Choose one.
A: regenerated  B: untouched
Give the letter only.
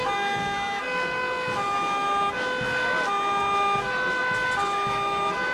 B